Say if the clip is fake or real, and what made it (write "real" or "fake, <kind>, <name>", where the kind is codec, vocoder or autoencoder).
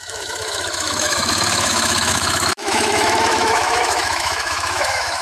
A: fake, autoencoder, DAC-VAE